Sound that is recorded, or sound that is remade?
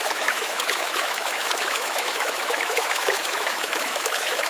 remade